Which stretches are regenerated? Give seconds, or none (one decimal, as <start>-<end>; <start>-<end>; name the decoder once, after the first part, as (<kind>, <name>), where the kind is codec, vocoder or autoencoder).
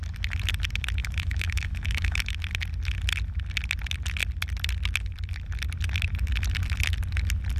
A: 1.0-2.2 (autoencoder, DAC-VAE)